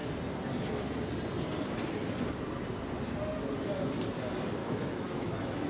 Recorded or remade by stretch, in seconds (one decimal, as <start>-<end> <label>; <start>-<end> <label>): 0.0-4.6 recorded; 4.6-5.7 remade